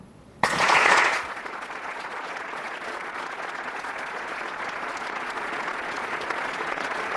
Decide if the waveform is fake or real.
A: fake